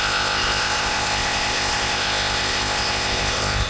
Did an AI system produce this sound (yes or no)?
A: yes